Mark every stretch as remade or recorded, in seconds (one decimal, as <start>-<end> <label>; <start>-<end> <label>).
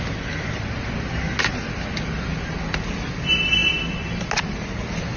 0.0-2.3 recorded; 2.3-3.1 remade; 3.1-5.2 recorded